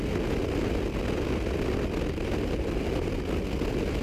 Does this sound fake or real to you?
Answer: real